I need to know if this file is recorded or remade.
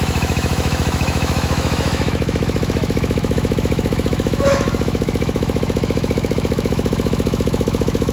remade